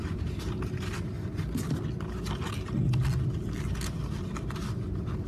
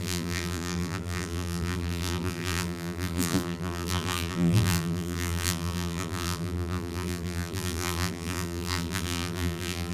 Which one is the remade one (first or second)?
second